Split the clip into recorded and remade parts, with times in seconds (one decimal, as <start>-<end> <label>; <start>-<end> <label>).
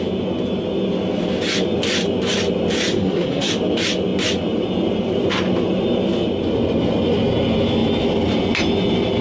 0.0-2.9 recorded; 2.9-3.5 remade; 3.5-9.2 recorded